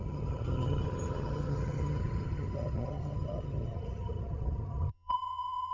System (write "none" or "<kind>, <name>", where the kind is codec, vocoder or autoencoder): vocoder, HiFi-GAN